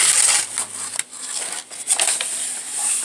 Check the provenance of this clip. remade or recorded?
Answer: recorded